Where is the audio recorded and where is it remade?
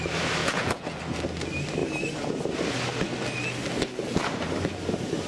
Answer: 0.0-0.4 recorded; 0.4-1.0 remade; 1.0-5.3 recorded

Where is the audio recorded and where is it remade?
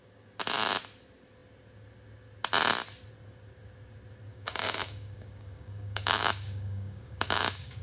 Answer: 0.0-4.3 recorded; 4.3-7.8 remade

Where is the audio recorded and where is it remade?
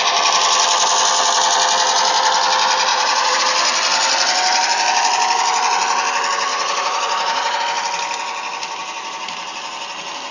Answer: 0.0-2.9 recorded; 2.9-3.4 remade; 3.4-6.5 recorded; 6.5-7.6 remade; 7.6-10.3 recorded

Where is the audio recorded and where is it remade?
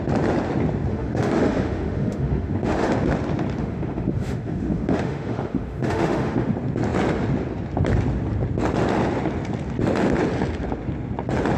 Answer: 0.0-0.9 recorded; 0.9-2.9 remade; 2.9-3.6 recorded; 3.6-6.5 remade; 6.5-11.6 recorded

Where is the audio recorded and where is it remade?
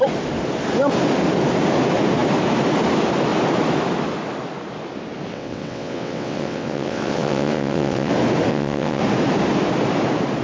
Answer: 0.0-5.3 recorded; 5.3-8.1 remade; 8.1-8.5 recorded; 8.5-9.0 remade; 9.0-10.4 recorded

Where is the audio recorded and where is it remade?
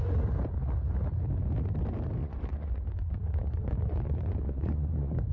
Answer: 0.0-2.2 recorded; 2.2-5.3 remade